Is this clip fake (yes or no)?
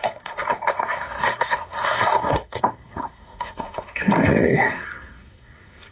yes